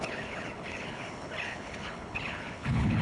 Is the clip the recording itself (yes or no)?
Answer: no